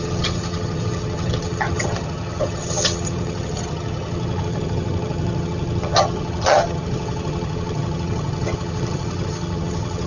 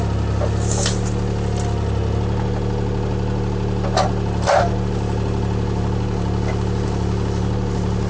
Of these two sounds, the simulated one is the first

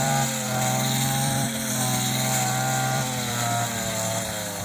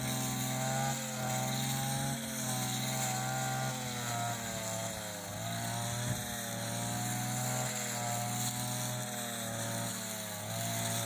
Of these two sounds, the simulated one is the first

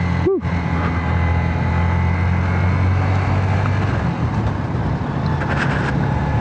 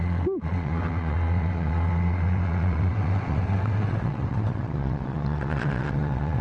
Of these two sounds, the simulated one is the second